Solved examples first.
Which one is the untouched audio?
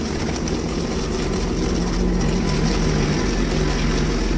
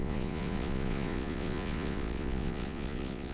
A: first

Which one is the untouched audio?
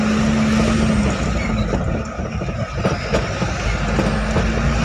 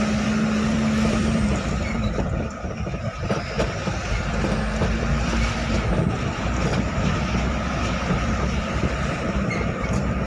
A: first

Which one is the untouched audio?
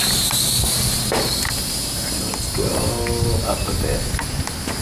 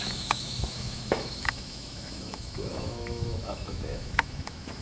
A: first